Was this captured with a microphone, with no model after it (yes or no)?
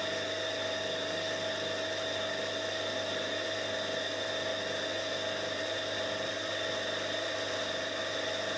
yes